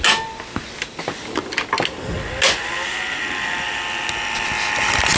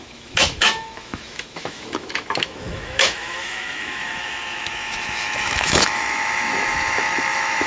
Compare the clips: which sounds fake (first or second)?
second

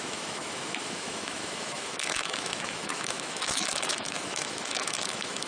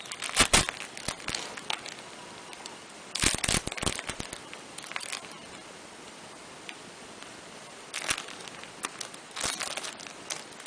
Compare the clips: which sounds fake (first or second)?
first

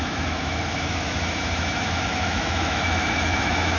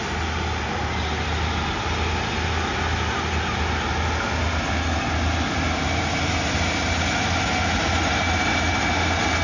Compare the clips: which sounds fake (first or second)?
first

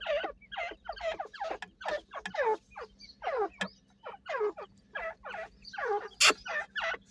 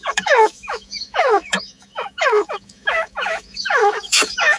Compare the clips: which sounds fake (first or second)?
second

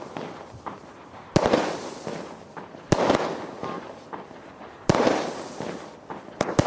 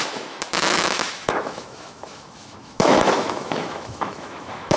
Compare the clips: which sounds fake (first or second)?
second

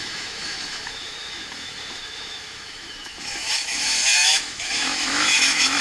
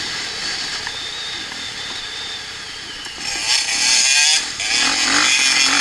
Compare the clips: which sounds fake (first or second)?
first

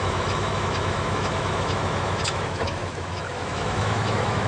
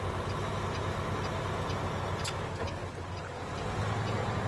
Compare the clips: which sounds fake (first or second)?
first